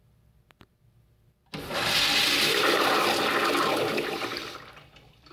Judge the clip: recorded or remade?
recorded